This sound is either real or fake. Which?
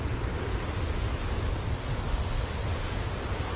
real